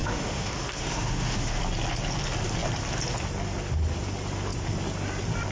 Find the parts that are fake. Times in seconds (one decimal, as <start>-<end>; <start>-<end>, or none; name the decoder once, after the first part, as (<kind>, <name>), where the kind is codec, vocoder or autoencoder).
0.0-1.6 (autoencoder, DAC-VAE)